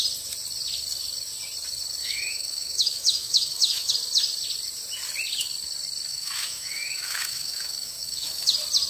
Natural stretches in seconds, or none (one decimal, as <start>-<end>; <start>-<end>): 0.0-2.0; 3.9-6.1; 8.5-8.9